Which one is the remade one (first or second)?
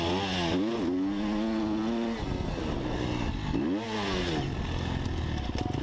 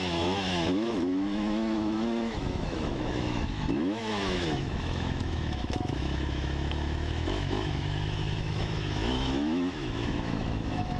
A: second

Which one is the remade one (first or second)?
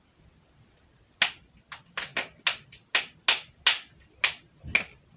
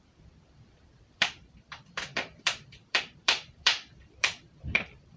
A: second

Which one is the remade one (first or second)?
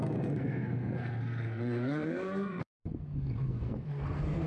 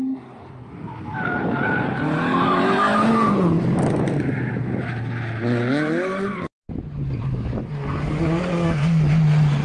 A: first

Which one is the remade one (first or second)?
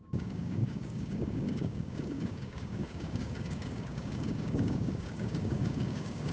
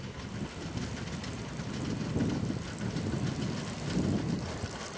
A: first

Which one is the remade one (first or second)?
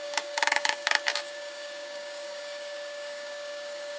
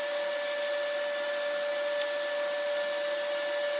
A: first